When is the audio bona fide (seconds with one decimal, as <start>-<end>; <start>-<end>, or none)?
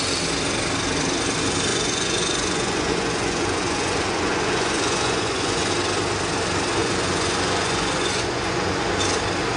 0.0-1.7; 5.7-6.8; 8.9-9.6